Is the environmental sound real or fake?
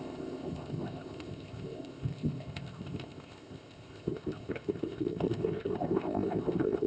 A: fake